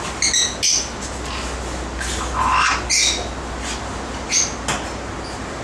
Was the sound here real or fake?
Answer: real